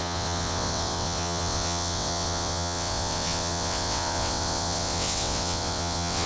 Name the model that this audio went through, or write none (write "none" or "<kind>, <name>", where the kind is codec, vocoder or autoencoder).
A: vocoder, WaveNeXt